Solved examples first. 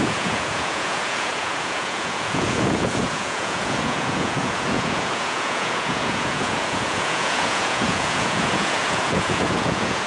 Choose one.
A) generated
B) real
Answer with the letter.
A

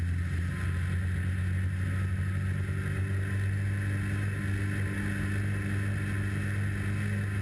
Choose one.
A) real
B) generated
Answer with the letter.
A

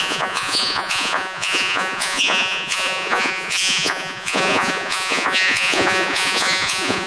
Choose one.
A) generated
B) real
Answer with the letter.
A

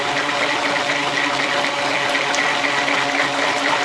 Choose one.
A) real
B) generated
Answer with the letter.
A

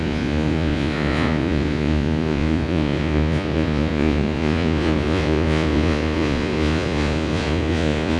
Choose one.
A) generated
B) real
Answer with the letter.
A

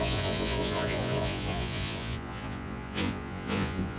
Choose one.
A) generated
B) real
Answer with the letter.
A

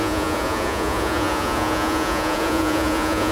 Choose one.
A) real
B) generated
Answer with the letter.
B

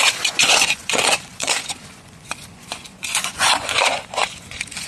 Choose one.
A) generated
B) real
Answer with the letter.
A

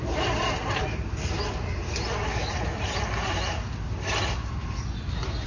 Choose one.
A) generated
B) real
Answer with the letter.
B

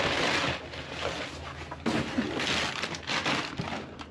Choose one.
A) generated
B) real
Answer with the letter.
B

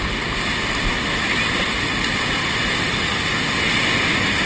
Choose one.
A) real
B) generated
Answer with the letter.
A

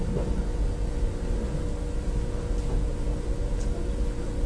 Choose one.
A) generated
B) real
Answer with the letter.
B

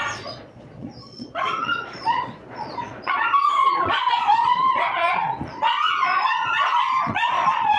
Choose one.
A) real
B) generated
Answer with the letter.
B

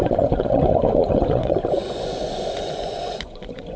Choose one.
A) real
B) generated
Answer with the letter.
B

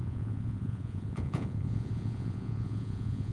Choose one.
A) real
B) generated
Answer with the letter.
B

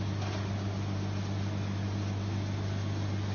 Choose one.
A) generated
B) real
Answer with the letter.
B